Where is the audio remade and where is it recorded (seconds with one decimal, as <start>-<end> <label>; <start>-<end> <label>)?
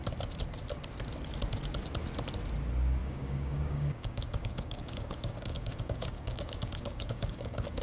0.0-3.0 recorded; 3.0-7.8 remade